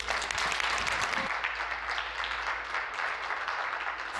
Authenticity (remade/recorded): recorded